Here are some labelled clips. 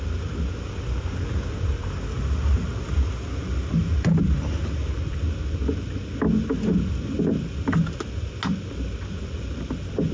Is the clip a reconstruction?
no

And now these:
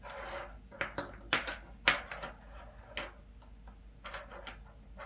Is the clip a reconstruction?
no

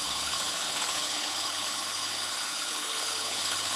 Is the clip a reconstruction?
yes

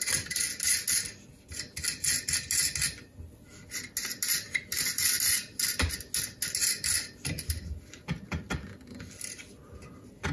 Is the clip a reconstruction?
no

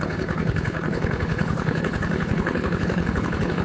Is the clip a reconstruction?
yes